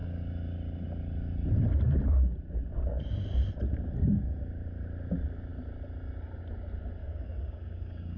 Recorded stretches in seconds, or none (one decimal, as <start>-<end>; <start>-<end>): 0.0-7.0